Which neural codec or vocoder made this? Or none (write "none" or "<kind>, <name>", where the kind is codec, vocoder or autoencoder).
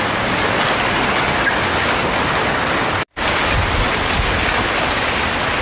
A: none